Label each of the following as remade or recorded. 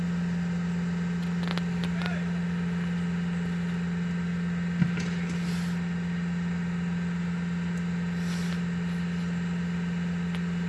recorded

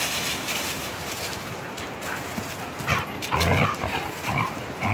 recorded